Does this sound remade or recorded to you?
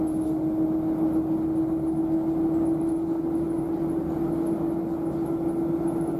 recorded